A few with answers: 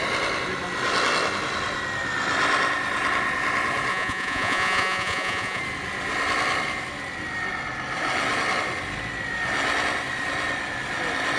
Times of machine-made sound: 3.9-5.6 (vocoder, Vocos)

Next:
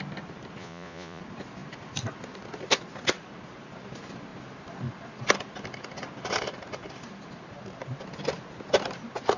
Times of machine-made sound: 0.6-1.2 (vocoder, Vocos)

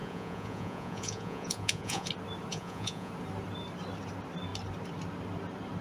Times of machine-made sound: 0.0-2.1 (vocoder, Vocos); 2.5-3.1